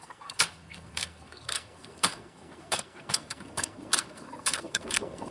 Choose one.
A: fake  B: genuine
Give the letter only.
A